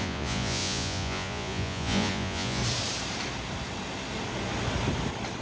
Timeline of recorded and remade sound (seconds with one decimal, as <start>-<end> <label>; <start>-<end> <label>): 0.0-2.6 remade; 2.6-5.4 recorded